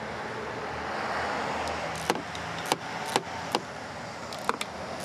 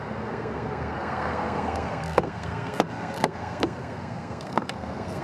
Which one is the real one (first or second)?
first